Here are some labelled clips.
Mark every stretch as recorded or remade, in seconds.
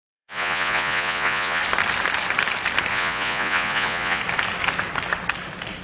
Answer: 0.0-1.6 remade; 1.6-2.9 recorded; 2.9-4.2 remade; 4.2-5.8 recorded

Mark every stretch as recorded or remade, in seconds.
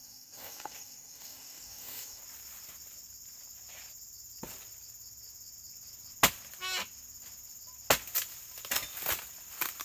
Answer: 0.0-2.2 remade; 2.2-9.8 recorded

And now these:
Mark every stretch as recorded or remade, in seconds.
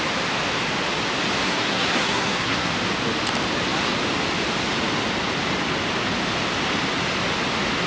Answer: 0.0-1.4 recorded; 1.4-2.7 remade; 2.7-7.9 recorded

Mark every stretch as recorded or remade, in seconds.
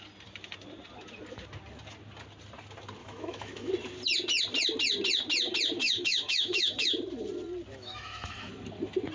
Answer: 0.0-3.0 recorded; 3.0-3.7 remade; 3.7-5.8 recorded; 5.8-6.9 remade; 6.9-7.7 recorded; 7.7-8.5 remade; 8.5-9.1 recorded